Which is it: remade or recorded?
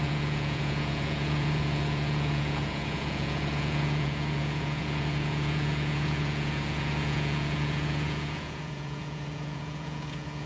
remade